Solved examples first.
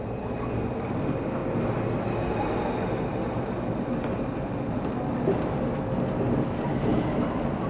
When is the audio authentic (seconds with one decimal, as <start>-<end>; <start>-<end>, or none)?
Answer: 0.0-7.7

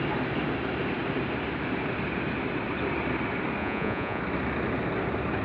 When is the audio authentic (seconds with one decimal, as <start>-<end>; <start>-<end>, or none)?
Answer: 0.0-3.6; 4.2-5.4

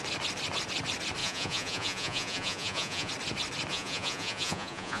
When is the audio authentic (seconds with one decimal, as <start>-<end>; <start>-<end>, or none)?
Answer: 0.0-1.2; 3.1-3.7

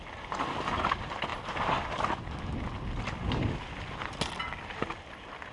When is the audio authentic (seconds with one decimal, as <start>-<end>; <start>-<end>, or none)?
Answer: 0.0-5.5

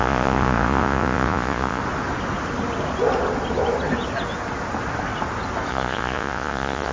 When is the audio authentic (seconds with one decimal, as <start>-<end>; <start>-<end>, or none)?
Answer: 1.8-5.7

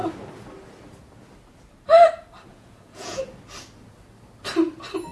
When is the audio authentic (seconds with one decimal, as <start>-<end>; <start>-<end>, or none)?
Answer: 0.0-2.5; 3.2-5.1

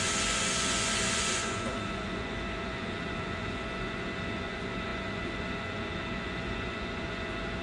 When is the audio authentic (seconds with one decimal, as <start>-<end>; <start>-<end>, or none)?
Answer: none

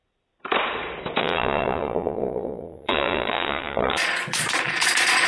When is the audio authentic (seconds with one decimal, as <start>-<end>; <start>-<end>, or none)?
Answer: 0.0-1.2